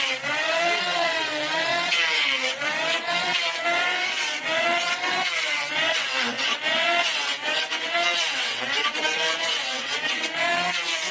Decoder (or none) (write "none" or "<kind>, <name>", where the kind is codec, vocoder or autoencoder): vocoder, WaveNeXt